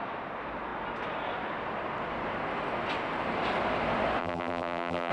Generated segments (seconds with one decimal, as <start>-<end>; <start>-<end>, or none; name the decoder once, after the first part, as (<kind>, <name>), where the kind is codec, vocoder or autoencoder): 4.2-5.1 (vocoder, BigVGAN v2)